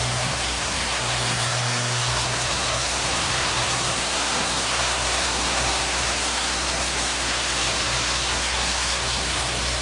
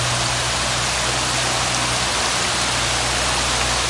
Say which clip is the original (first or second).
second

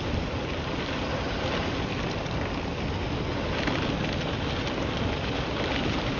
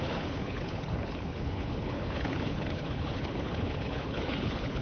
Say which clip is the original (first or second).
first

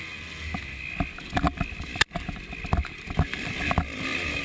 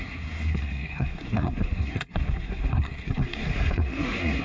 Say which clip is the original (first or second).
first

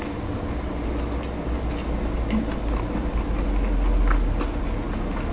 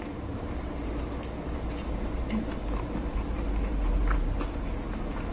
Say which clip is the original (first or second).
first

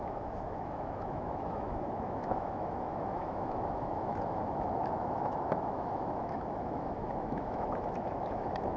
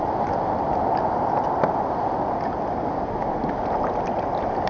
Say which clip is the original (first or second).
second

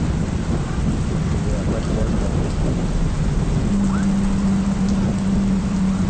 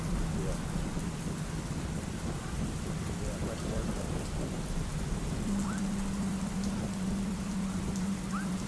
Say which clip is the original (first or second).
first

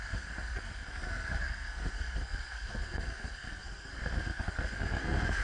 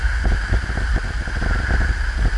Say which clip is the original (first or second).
second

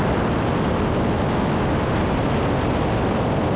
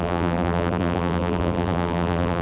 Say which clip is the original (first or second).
first